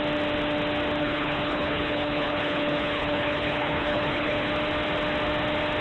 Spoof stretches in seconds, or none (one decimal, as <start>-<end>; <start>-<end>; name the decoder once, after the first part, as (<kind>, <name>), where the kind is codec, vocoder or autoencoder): 1.0-4.5 (codec, HILCodec)